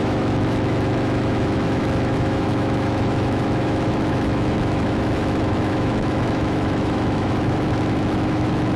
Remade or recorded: remade